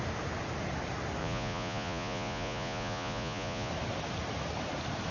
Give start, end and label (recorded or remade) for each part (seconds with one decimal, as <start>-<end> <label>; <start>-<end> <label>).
0.0-1.2 recorded; 1.2-3.7 remade; 3.7-5.1 recorded